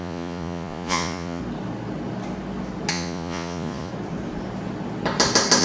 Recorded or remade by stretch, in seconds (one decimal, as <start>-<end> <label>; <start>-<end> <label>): 0.0-1.4 remade; 1.4-2.9 recorded; 2.9-3.9 remade; 3.9-5.6 recorded